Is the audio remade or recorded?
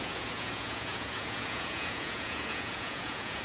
remade